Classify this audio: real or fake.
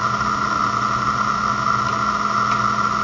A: real